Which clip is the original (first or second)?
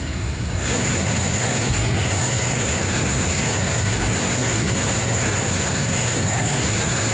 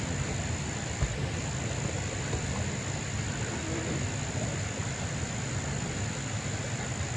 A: second